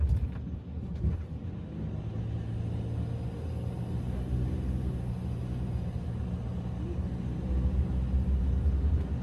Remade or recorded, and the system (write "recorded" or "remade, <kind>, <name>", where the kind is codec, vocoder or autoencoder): recorded